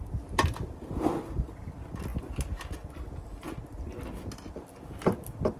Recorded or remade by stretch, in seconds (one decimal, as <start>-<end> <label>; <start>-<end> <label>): 0.0-5.6 recorded